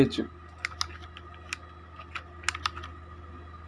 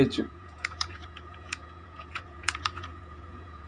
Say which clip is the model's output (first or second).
second